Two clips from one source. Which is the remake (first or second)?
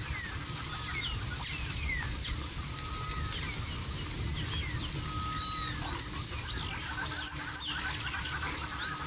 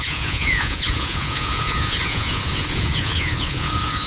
second